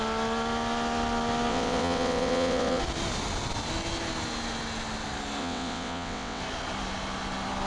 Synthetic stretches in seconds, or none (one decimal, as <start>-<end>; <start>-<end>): 1.5-2.8; 5.4-6.4